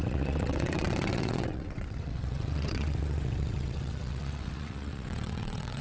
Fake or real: fake